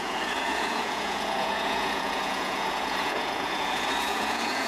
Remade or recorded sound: remade